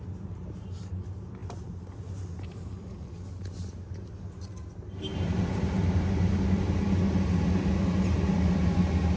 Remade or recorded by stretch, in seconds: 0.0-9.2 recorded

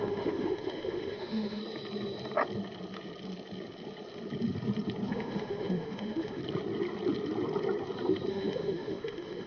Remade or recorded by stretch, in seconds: 0.0-1.6 remade; 1.6-5.1 recorded; 5.1-6.4 remade; 6.4-8.3 recorded; 8.3-9.5 remade

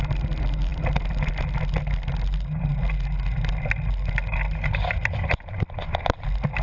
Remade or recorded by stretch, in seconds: 0.0-6.6 recorded

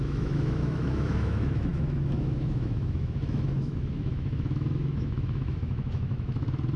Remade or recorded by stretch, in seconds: 0.0-6.8 remade